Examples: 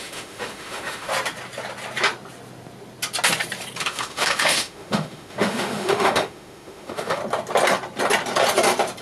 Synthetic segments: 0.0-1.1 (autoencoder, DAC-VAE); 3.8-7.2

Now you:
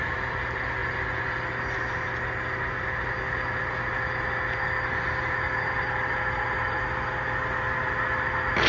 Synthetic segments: none

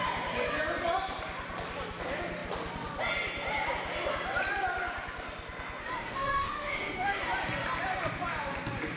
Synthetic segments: 5.8-7.2 (autoencoder, DAC-VAE)

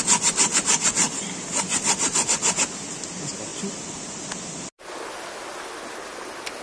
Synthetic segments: none